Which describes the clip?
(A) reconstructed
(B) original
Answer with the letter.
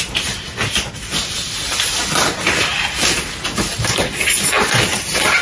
B